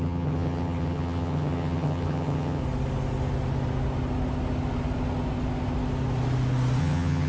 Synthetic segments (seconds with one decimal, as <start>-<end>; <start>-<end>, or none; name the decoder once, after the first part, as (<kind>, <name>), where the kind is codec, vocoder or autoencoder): 0.0-2.6 (vocoder, HiFi-GAN); 6.8-7.3

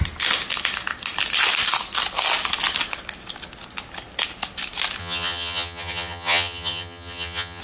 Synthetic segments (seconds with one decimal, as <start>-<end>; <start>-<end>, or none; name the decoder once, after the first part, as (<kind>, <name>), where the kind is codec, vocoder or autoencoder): 5.0-7.6 (vocoder, HiFi-GAN)

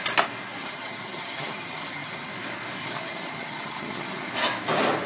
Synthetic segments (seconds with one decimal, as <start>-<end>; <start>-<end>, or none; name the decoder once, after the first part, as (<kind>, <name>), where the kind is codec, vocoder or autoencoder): 0.6-2.3 (vocoder, HiFi-GAN); 2.8-4.3

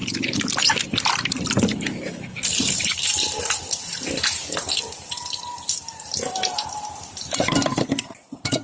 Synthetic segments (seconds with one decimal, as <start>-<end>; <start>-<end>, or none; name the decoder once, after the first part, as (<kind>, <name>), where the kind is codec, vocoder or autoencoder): none

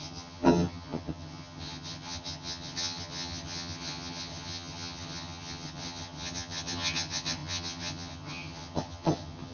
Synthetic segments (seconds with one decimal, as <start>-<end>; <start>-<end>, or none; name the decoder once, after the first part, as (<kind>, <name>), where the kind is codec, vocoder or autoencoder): 0.0-9.5 (vocoder, HiFi-GAN)